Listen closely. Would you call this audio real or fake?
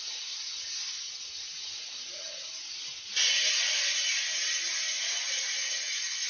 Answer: real